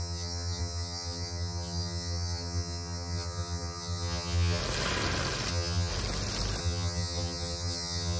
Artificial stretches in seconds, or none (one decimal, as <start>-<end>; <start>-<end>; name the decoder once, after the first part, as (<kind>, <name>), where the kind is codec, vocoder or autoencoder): 0.0-4.6 (vocoder, HiFi-GAN); 5.5-5.9; 6.6-8.2